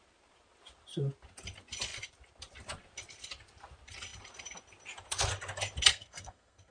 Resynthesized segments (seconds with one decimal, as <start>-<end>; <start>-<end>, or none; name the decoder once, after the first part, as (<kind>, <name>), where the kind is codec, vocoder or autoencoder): 5.9-6.7 (codec, SNAC)